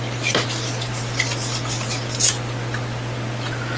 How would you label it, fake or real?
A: real